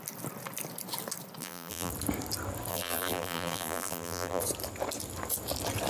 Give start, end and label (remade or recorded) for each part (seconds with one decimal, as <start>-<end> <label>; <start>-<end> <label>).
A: 0.0-1.4 recorded; 1.4-1.9 remade; 1.9-2.7 recorded; 2.7-4.4 remade; 4.4-5.9 recorded